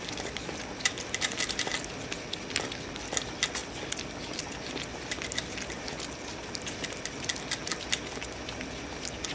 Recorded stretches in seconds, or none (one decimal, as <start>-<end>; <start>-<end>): 0.0-9.3